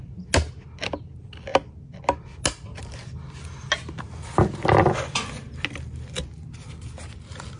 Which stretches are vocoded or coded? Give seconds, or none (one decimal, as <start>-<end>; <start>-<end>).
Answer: none